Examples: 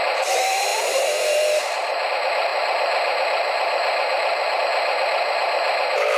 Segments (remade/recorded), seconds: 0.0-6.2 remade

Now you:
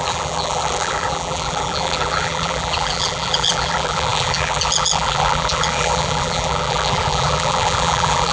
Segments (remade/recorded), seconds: 0.0-8.3 remade

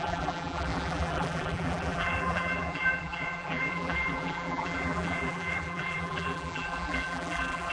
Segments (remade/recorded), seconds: 0.0-7.7 remade